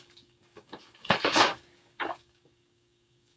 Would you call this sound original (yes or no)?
no